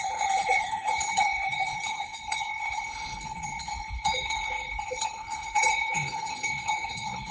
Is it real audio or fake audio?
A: fake